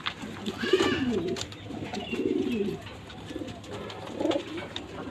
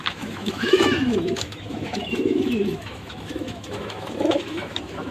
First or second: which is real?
first